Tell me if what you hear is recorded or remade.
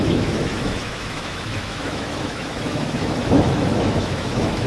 remade